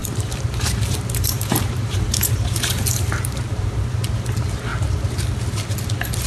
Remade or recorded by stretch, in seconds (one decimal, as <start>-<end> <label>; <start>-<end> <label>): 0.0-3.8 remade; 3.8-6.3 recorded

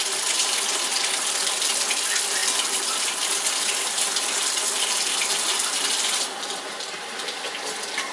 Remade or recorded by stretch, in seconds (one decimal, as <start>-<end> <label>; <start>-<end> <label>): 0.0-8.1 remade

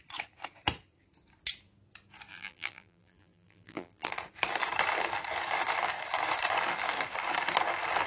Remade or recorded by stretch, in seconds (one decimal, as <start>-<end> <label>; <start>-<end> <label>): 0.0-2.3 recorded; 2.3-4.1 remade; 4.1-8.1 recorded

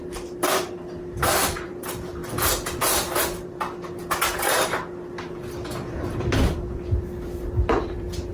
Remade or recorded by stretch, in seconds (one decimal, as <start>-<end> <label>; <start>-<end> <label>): 0.0-2.2 remade; 2.2-2.8 recorded; 2.8-8.3 remade